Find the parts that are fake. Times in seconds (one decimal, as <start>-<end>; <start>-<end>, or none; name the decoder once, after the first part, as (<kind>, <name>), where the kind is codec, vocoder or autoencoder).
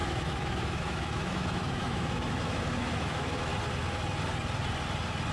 0.0-3.5 (autoencoder, DAC-VAE)